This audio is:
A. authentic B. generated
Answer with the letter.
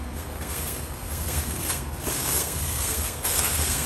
B